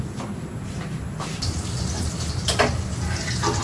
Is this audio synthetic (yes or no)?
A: no